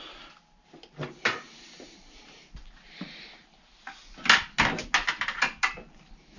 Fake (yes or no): no